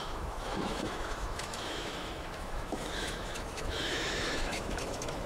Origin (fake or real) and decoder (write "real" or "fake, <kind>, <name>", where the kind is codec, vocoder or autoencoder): fake, autoencoder, DAC-VAE